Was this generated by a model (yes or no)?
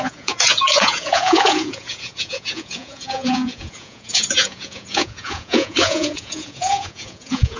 yes